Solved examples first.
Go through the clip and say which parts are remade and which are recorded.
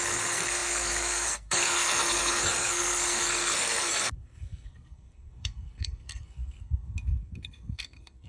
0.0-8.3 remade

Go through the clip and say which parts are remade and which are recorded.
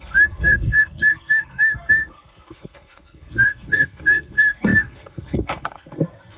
0.0-6.4 remade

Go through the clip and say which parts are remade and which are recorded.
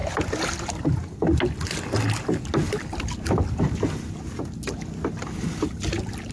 0.0-6.3 recorded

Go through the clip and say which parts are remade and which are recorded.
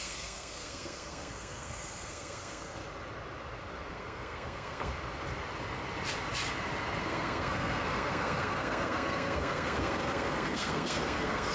0.0-2.8 remade; 2.8-3.9 recorded; 3.9-4.9 remade; 4.9-7.0 recorded; 7.0-11.5 remade